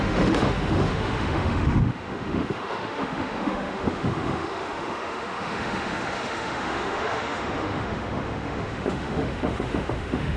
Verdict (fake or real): fake